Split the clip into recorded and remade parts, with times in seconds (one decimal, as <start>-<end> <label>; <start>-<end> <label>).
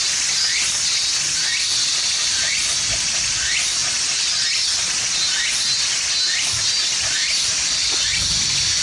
0.0-8.8 recorded